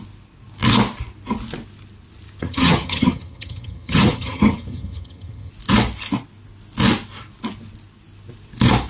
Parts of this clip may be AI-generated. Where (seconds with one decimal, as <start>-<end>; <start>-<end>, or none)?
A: 2.4-5.5